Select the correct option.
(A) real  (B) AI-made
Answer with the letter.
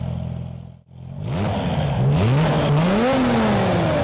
A